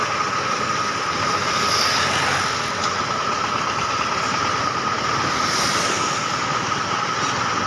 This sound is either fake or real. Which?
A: real